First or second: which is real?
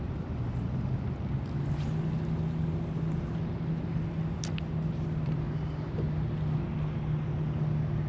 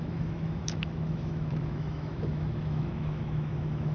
first